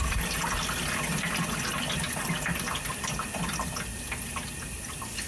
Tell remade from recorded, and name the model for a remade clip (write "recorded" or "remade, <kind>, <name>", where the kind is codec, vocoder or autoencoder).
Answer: recorded